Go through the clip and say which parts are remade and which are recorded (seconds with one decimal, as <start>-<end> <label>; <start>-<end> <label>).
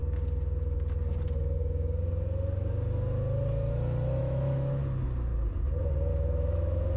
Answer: 0.0-4.2 recorded; 4.2-4.8 remade; 4.8-6.1 recorded; 6.1-7.0 remade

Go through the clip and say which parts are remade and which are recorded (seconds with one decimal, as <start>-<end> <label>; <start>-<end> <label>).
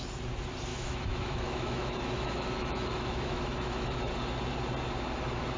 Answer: 0.0-0.7 recorded; 0.7-4.1 remade; 4.1-5.6 recorded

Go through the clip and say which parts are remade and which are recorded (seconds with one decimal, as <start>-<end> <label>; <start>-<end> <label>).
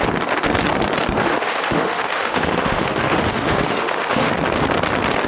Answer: 0.0-1.2 recorded; 1.2-4.3 remade; 4.3-5.3 recorded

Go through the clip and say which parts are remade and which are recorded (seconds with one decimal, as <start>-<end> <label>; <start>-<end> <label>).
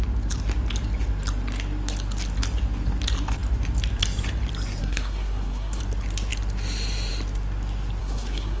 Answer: 0.0-4.8 recorded; 4.8-5.8 remade; 5.8-8.0 recorded; 8.0-8.6 remade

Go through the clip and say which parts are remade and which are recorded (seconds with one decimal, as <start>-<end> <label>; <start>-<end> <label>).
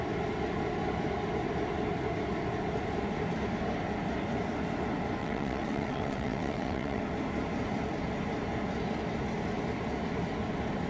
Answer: 0.0-5.2 recorded; 5.2-7.0 remade; 7.0-10.9 recorded